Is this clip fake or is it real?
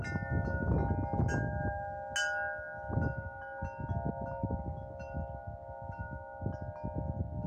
real